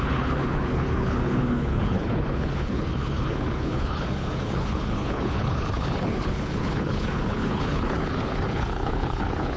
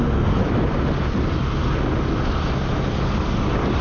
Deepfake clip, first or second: first